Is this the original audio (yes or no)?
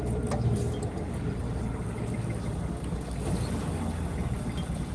yes